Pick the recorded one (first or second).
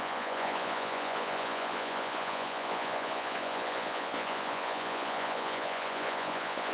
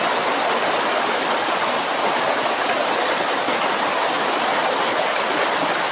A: second